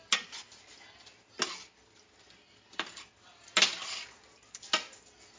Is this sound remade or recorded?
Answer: recorded